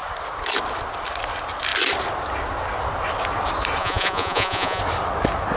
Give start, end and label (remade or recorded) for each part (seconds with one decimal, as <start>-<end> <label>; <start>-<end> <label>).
0.0-3.8 recorded; 3.8-4.8 remade; 4.8-5.6 recorded